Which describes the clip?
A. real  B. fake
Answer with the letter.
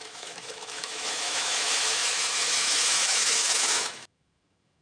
B